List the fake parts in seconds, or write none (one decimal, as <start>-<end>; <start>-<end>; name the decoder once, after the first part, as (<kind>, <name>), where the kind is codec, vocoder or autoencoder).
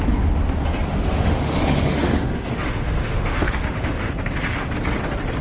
0.9-4.1 (autoencoder, DAC-VAE)